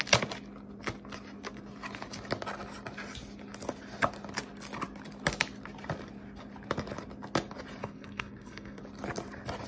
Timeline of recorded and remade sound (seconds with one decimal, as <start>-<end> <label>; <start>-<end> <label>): 0.0-7.8 recorded; 7.8-8.8 remade; 8.8-9.7 recorded